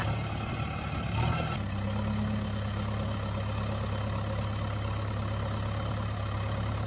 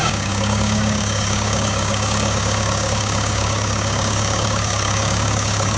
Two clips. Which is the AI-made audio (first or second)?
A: second